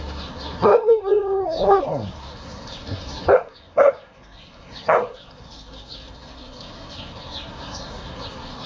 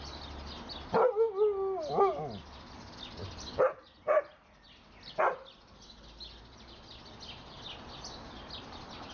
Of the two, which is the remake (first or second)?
first